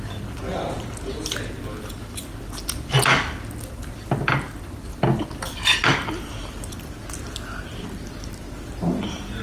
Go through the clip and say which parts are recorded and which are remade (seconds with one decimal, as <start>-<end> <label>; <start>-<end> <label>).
0.0-9.4 recorded